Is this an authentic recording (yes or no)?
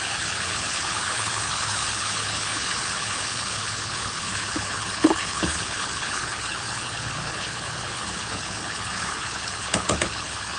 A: no